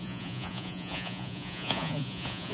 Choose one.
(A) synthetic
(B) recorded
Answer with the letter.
A